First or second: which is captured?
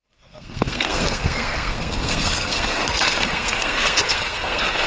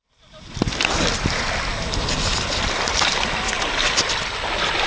second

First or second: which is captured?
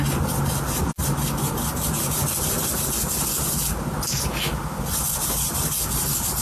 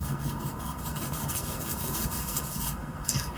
first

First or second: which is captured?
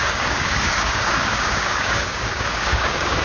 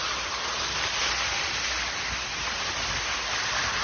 second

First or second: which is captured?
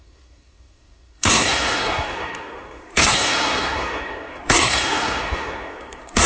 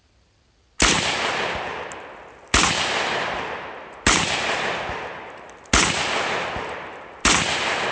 second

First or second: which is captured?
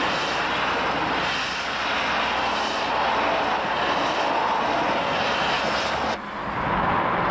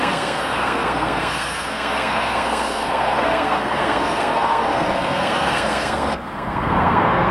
first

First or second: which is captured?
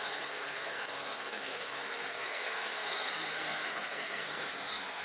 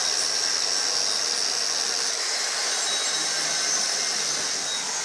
second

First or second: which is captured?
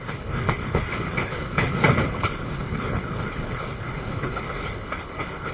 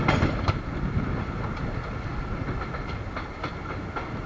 second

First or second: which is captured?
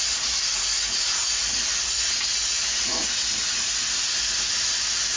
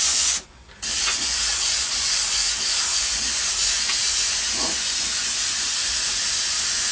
first